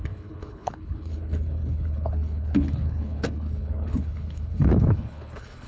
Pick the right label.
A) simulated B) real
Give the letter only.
A